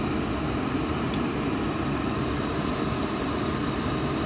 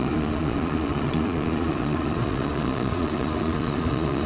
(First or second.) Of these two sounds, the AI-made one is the second